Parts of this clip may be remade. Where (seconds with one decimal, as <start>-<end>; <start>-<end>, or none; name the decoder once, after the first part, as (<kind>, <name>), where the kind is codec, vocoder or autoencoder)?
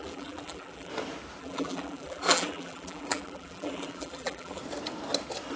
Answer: 0.0-0.9 (vocoder, BigVGAN v2); 1.4-4.6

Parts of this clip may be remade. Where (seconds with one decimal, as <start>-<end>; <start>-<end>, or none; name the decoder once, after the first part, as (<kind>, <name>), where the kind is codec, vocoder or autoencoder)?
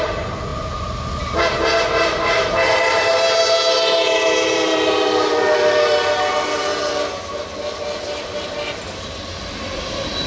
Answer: 0.0-6.7 (vocoder, BigVGAN v2)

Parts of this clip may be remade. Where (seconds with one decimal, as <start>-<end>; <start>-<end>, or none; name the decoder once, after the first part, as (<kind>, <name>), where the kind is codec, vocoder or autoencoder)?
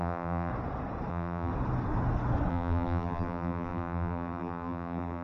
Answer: 0.0-0.5 (vocoder, BigVGAN v2); 1.1-1.5; 2.5-5.2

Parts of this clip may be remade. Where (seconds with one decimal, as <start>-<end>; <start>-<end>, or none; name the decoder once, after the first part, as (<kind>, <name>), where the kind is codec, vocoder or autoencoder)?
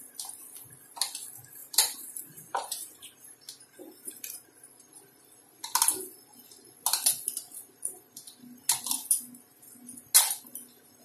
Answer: 1.6-4.1 (vocoder, BigVGAN v2)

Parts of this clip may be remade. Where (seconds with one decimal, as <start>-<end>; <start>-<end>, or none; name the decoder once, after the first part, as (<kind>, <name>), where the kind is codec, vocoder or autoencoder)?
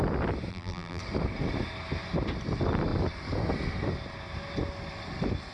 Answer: 0.5-1.0 (vocoder, BigVGAN v2)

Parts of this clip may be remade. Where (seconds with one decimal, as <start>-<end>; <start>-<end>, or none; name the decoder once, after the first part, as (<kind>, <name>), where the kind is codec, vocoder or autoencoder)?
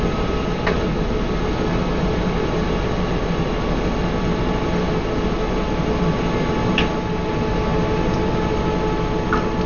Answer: 7.7-8.3 (vocoder, BigVGAN v2)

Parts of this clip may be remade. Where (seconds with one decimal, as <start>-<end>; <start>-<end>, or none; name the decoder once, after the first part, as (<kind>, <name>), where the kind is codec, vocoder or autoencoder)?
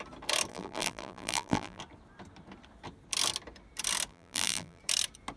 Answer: 0.5-1.8 (vocoder, BigVGAN v2); 4.1-4.8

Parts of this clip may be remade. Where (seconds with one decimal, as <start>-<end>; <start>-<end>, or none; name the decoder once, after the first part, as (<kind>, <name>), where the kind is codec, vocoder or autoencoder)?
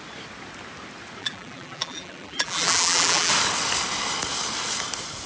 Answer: 1.2-3.3 (vocoder, BigVGAN v2)